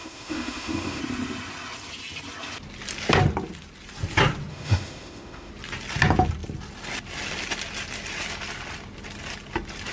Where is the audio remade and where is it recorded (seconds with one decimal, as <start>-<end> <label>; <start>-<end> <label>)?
0.0-1.0 remade; 1.0-4.5 recorded; 4.5-5.5 remade; 5.5-9.9 recorded